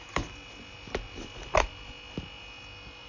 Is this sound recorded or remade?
recorded